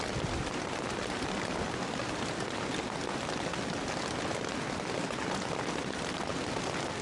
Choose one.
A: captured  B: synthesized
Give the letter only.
A